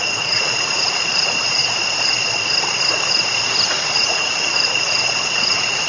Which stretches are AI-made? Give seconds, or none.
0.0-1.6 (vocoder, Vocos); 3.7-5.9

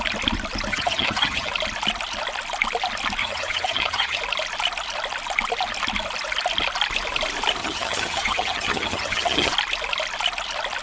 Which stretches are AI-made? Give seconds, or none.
0.7-1.5 (vocoder, HiFi-GAN); 3.2-4.2; 7.6-9.5

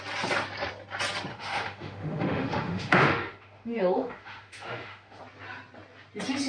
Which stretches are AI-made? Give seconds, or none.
1.3-5.2 (autoencoder, DAC-VAE)